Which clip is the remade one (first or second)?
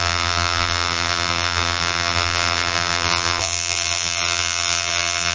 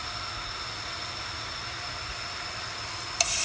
first